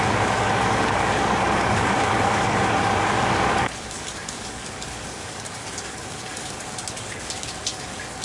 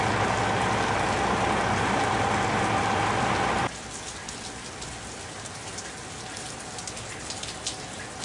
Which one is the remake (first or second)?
first